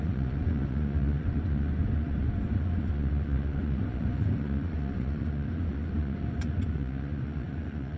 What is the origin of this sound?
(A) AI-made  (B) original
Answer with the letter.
A